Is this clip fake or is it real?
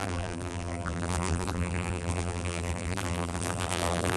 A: fake